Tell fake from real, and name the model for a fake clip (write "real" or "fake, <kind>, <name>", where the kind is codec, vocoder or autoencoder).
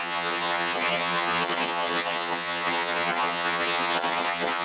fake, vocoder, HiFi-GAN